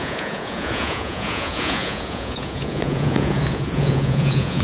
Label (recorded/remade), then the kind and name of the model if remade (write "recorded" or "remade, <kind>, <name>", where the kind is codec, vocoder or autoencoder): remade, vocoder, Vocos